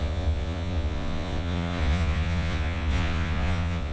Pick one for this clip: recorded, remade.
remade